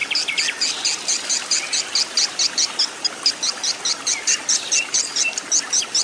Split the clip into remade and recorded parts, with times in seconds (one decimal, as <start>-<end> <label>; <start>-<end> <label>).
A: 0.0-6.0 recorded